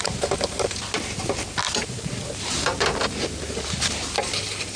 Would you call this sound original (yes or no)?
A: yes